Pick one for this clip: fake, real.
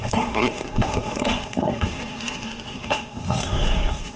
fake